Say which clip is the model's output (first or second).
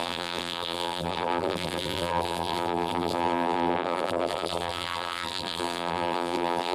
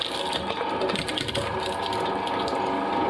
first